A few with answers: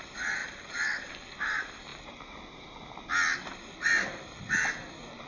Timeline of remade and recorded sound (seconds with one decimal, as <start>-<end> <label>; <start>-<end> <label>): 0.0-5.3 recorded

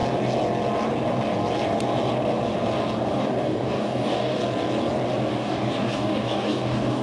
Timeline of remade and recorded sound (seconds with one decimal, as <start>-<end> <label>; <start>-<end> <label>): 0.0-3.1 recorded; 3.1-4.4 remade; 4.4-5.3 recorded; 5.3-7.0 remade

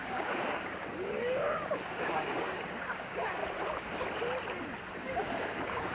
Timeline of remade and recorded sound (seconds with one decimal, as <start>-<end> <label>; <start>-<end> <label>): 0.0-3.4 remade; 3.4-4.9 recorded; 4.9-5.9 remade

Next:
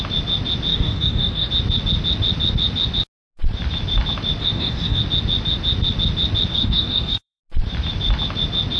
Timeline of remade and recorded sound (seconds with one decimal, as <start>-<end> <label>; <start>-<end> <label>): 0.0-0.7 recorded; 0.7-1.5 remade; 1.5-4.4 recorded; 4.4-5.0 remade; 5.0-6.5 recorded; 6.5-7.4 remade; 7.4-8.8 recorded

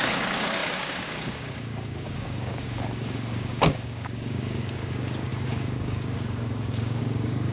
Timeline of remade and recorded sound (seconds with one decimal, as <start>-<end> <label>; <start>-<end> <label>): 0.0-7.5 remade

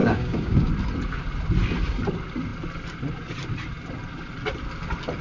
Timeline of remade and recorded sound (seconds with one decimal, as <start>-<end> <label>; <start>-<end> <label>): 0.0-0.7 remade; 0.7-5.2 recorded